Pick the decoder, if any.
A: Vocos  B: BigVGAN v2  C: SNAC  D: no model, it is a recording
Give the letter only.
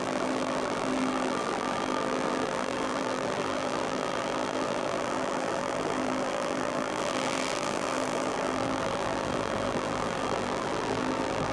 B